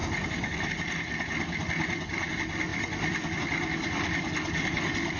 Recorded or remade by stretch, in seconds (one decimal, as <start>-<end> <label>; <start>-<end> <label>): 0.0-0.7 remade; 0.7-1.6 recorded; 1.6-2.3 remade; 2.3-2.7 recorded; 2.7-3.4 remade; 3.4-5.2 recorded